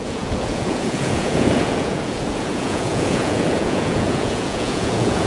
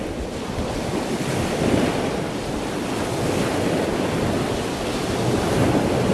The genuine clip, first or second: second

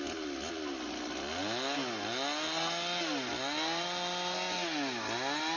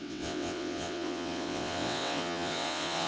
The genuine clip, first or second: first